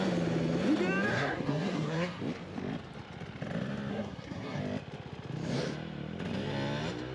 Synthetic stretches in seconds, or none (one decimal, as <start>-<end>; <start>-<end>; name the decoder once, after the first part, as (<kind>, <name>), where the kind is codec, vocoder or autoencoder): 1.1-2.2 (codec, SNAC); 3.9-4.6

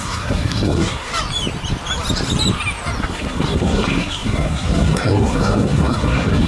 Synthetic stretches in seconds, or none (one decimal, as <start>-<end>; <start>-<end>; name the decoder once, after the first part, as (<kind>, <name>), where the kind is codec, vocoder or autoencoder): 0.0-1.1 (codec, SNAC); 3.0-6.5

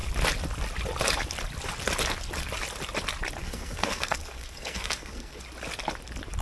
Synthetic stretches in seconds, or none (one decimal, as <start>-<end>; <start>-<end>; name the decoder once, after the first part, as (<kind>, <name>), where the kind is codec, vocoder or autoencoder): 3.4-5.4 (codec, SNAC)

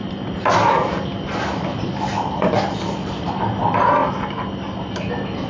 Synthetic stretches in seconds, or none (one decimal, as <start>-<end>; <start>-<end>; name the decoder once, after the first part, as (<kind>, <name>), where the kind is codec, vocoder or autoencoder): none

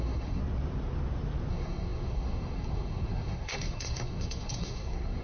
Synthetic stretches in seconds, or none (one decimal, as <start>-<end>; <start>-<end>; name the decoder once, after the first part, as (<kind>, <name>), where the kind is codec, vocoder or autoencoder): 0.0-0.4 (codec, SNAC); 1.5-5.2

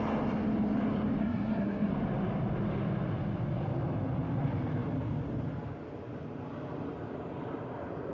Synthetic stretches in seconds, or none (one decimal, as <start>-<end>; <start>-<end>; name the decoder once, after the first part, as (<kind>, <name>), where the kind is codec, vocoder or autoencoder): 1.2-1.9 (codec, SNAC)

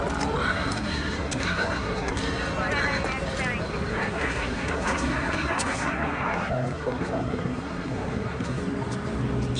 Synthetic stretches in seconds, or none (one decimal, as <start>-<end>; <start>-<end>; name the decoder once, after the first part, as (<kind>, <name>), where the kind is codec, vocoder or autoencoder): 0.5-2.2 (codec, SNAC); 3.9-8.6